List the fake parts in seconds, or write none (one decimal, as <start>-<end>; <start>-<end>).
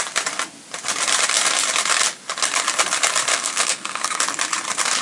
3.3-4.2